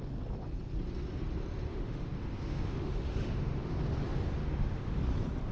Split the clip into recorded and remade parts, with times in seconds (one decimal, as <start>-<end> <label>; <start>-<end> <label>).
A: 0.0-1.7 recorded; 1.7-3.8 remade; 3.8-4.4 recorded; 4.4-5.0 remade; 5.0-5.5 recorded